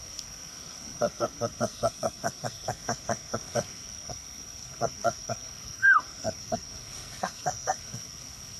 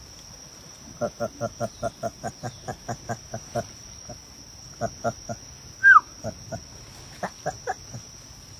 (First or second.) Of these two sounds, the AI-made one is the first